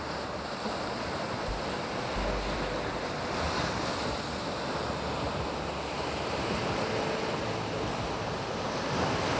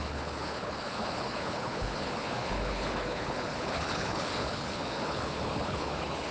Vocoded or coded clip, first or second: second